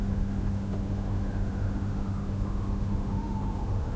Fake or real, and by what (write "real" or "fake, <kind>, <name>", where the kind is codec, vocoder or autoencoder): fake, autoencoder, DAC-VAE